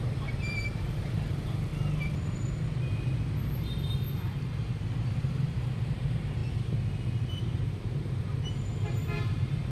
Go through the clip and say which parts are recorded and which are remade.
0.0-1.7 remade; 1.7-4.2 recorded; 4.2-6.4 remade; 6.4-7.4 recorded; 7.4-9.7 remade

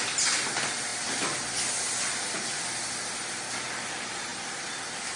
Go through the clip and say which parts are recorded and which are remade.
0.0-5.2 recorded

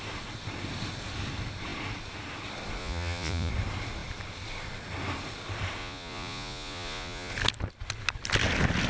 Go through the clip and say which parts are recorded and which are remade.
0.0-2.8 recorded; 2.8-3.5 remade; 3.5-5.8 recorded; 5.8-7.3 remade; 7.3-8.9 recorded

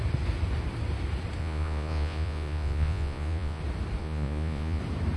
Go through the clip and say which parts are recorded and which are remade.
0.0-1.4 recorded; 1.4-3.6 remade; 3.6-4.0 recorded; 4.0-4.8 remade; 4.8-5.2 recorded